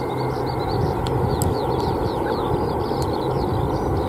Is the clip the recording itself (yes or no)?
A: yes